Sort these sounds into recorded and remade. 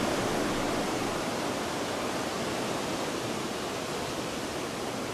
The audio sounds recorded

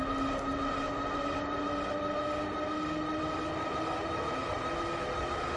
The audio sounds recorded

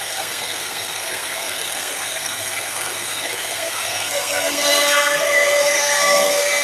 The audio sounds remade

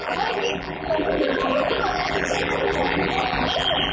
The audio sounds remade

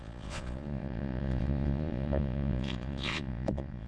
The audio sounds remade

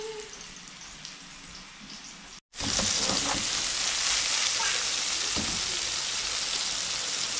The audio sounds recorded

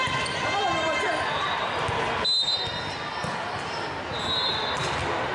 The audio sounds recorded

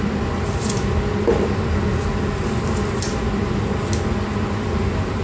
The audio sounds recorded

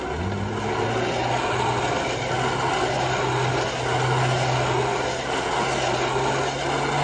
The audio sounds recorded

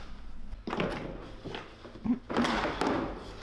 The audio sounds recorded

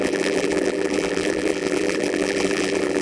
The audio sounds remade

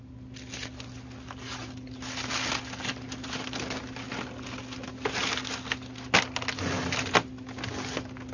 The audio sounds recorded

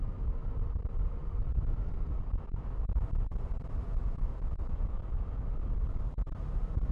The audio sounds recorded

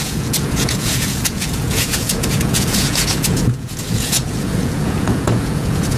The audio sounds remade